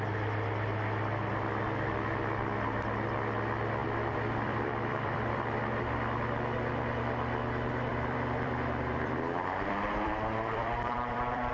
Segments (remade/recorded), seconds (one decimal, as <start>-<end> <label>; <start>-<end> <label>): 0.0-3.8 recorded; 3.8-5.8 remade; 5.8-7.9 recorded; 7.9-11.5 remade

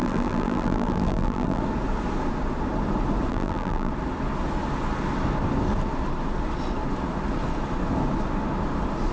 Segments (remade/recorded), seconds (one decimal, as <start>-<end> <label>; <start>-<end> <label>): 0.0-1.6 remade; 1.6-3.3 recorded; 3.3-3.9 remade; 3.9-9.1 recorded

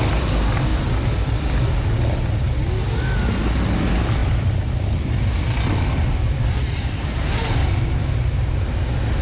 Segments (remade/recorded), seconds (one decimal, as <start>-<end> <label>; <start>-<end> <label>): 0.0-0.7 recorded; 0.7-1.6 remade; 1.6-4.2 recorded; 4.2-8.3 remade; 8.3-9.2 recorded